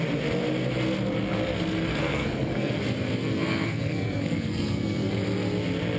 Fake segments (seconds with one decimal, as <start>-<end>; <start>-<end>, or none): 1.9-2.8; 3.2-5.1